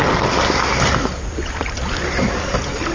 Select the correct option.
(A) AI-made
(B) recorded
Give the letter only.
B